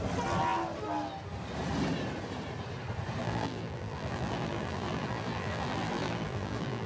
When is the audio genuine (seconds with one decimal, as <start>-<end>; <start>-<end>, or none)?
0.0-3.2